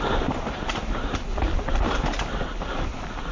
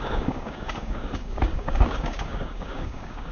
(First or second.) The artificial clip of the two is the second